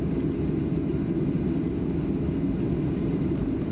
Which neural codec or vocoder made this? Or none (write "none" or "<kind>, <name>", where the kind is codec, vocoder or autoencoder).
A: none